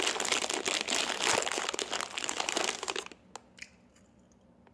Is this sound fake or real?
real